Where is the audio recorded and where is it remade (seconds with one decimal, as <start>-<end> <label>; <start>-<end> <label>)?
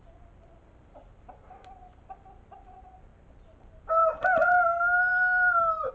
0.0-5.9 recorded